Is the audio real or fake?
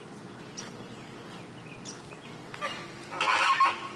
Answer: real